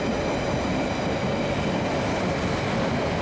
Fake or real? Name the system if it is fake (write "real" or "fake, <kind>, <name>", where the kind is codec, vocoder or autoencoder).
real